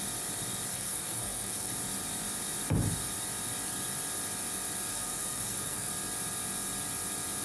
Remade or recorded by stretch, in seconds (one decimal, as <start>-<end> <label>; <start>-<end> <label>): 0.0-0.7 recorded; 0.7-1.7 remade; 1.7-4.9 recorded; 4.9-5.9 remade; 5.9-7.4 recorded